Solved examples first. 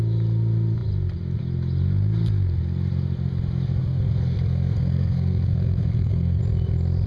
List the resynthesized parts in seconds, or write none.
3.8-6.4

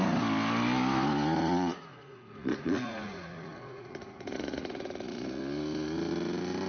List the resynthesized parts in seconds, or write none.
1.4-5.4

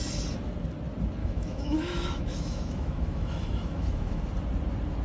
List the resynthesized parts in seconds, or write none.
1.2-4.2